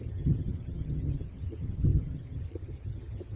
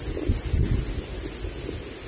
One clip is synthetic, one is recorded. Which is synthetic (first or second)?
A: first